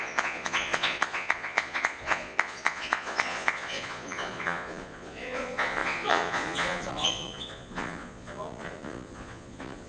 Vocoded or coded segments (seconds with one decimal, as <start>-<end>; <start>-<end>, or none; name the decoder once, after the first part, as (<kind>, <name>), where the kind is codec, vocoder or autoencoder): 0.0-9.9 (vocoder, Vocos)